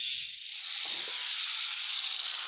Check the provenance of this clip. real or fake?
real